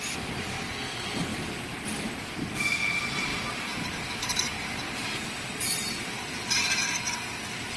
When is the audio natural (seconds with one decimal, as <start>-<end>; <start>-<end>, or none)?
0.0-1.3; 2.1-3.3